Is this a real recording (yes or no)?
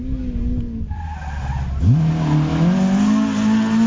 yes